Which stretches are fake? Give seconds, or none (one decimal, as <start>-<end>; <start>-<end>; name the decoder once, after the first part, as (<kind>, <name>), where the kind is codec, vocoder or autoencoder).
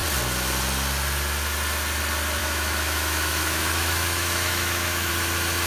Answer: 2.4-5.1 (autoencoder, DAC-VAE)